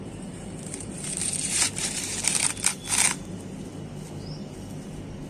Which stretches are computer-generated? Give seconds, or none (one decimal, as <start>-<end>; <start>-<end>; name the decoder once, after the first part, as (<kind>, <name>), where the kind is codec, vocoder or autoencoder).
0.0-2.8 (vocoder, BigVGAN v2)